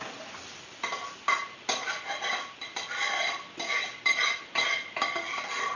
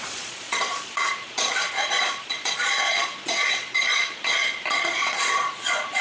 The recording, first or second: first